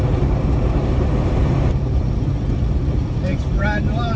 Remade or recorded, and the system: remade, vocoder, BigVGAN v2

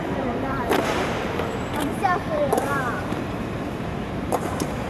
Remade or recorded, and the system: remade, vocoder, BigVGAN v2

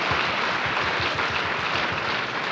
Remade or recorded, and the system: recorded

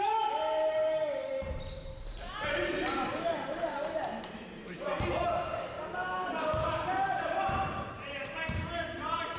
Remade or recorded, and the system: remade, vocoder, BigVGAN v2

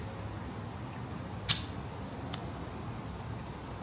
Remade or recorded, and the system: recorded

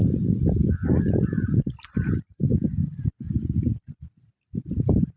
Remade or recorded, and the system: remade, vocoder, BigVGAN v2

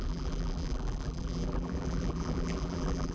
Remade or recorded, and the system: remade, vocoder, BigVGAN v2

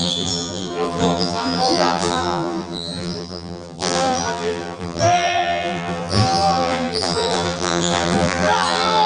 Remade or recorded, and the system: remade, vocoder, BigVGAN v2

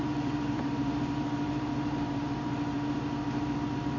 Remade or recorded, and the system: remade, vocoder, BigVGAN v2